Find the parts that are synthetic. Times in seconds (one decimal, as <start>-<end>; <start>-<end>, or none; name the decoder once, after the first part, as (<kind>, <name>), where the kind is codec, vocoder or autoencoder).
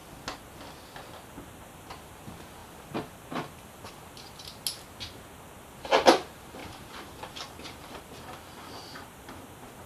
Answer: 2.6-3.9 (vocoder, BigVGAN v2); 6.6-9.5